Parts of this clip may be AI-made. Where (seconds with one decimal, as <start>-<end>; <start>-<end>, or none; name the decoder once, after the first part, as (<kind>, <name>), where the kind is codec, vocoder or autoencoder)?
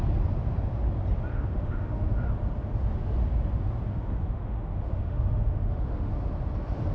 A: 1.3-2.3 (autoencoder, DAC-VAE); 3.9-6.1